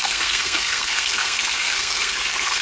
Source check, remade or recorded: remade